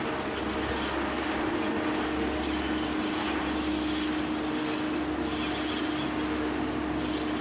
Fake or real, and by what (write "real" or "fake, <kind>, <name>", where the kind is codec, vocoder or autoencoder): real